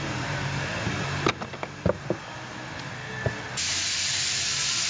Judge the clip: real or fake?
real